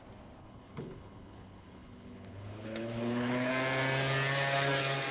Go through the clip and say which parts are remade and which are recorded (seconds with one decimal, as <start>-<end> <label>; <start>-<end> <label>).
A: 0.0-0.4 recorded; 0.4-3.5 remade; 3.5-5.1 recorded